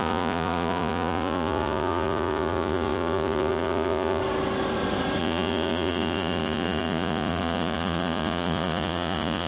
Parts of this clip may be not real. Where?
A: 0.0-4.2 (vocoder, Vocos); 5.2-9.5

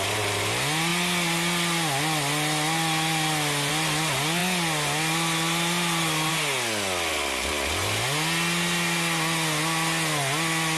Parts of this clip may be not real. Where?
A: none